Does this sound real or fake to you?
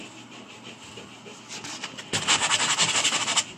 real